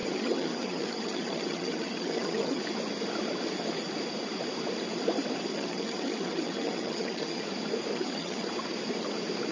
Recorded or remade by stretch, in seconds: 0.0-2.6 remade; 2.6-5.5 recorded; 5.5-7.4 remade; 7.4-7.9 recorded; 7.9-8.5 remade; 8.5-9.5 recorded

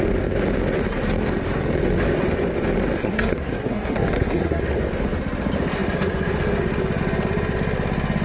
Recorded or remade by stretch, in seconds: 0.0-3.0 recorded; 3.0-4.6 remade; 4.6-8.2 recorded

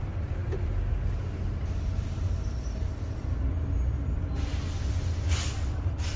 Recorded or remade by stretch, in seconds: 0.0-6.2 recorded

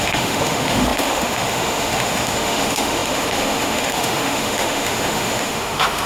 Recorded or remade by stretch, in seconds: 0.0-6.1 remade

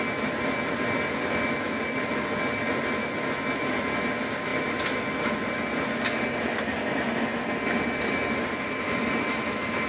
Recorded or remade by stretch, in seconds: 0.0-9.9 recorded